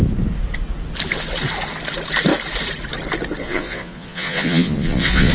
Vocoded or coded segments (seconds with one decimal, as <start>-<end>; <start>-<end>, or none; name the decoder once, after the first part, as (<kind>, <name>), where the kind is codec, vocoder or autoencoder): 3.4-5.3 (vocoder, Vocos)